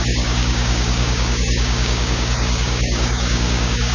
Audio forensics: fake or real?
fake